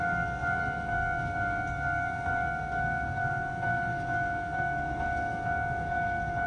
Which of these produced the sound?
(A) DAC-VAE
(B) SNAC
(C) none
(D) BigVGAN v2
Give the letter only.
B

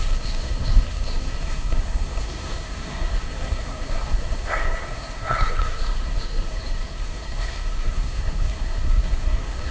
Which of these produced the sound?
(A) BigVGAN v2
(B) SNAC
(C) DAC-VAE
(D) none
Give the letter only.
B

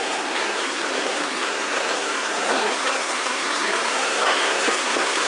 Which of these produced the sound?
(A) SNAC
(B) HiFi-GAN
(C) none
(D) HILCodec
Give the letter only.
A